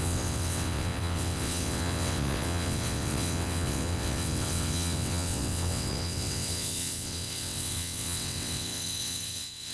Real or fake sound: fake